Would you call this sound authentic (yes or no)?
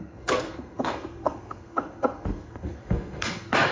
no